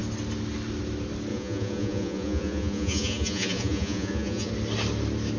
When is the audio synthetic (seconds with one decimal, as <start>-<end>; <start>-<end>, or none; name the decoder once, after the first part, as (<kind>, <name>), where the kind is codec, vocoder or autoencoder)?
1.3-4.5 (vocoder, Vocos)